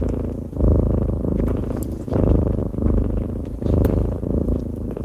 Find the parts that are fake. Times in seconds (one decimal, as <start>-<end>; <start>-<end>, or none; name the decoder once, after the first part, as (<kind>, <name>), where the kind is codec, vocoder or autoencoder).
1.6-4.6 (vocoder, BigVGAN v2)